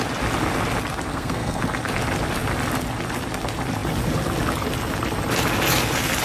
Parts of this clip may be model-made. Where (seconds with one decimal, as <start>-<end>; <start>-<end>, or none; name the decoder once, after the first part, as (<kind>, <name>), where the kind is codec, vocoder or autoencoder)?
1.1-1.6 (codec, SNAC)

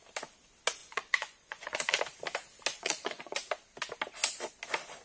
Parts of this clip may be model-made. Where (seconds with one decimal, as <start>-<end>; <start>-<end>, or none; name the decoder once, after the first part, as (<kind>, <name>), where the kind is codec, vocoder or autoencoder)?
0.8-2.0 (vocoder, Vocos); 2.7-3.4

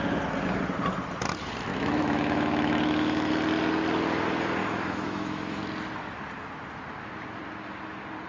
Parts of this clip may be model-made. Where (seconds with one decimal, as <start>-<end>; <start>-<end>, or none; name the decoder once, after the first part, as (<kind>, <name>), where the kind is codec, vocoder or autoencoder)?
1.7-3.3 (autoencoder, DAC-VAE); 4.6-5.6

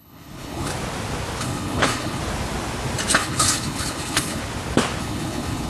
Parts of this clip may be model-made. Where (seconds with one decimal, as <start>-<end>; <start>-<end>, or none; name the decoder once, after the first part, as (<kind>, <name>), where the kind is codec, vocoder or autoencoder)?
0.0-0.7 (codec, HILCodec); 1.4-2.2; 3.1-4.4; 5.0-5.7

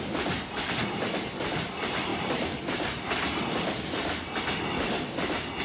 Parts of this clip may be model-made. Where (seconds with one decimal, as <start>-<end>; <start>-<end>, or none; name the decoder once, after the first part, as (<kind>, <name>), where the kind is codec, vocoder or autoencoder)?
none